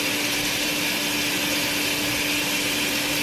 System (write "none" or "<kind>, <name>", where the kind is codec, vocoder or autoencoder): none